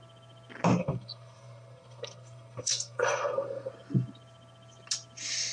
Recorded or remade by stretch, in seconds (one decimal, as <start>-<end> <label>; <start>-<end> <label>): 0.0-0.8 recorded; 0.8-3.7 remade; 3.7-5.5 recorded